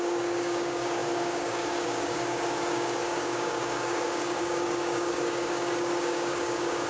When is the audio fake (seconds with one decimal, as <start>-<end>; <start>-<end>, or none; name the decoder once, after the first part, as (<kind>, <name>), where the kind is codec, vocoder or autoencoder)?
0.0-6.9 (codec, DAC)